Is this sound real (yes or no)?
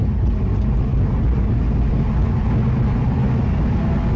yes